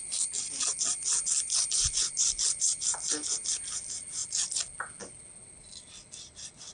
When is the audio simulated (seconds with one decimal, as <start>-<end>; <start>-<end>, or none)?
none